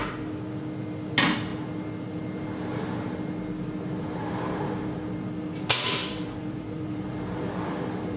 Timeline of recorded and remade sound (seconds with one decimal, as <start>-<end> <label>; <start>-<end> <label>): 0.0-6.0 recorded; 6.0-8.2 remade